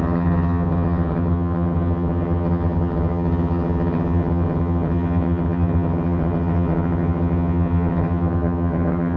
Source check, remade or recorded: remade